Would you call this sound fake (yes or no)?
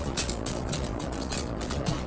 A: yes